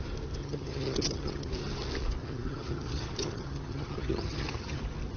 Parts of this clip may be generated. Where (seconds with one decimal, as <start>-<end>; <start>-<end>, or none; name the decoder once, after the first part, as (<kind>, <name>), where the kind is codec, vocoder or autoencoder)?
0.4-1.5 (vocoder, HiFi-GAN); 2.2-4.8